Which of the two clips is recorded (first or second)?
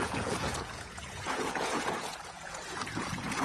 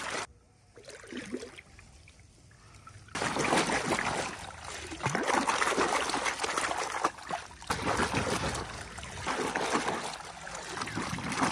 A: second